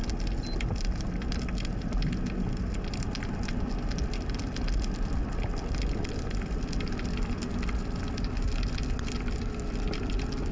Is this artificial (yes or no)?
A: no